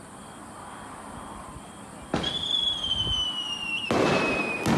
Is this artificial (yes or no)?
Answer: no